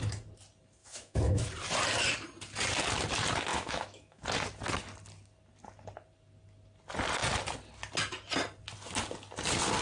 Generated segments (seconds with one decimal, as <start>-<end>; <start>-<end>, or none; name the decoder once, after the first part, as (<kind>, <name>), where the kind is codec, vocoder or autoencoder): 0.8-1.5 (autoencoder, DAC-VAE); 3.5-4.2